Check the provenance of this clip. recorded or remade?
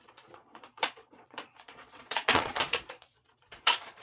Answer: remade